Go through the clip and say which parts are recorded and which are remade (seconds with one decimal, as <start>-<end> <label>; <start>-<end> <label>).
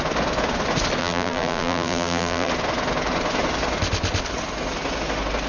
0.0-1.0 recorded; 1.0-2.5 remade; 2.5-5.5 recorded